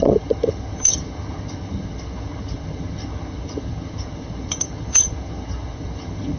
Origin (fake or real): fake